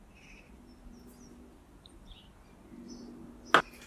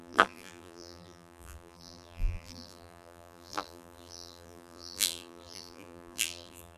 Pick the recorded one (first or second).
first